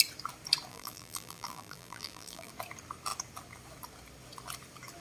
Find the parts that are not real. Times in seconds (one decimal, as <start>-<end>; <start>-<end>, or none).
0.7-2.5